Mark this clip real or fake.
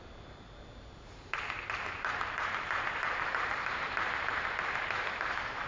fake